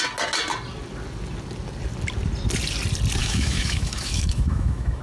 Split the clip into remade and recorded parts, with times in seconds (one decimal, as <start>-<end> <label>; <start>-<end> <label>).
0.0-3.2 recorded; 3.2-5.0 remade